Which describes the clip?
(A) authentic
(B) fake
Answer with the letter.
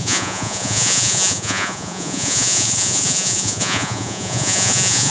B